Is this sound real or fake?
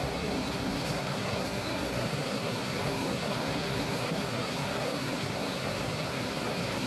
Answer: fake